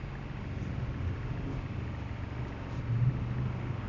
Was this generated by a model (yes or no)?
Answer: no